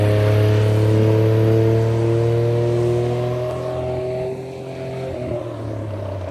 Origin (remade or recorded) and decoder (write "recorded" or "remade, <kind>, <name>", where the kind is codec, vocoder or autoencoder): recorded